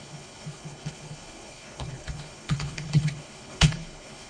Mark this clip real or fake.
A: fake